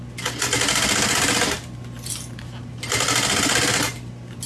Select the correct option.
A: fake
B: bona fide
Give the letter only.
B